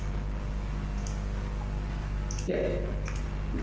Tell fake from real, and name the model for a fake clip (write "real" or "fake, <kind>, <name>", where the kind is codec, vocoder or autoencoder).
real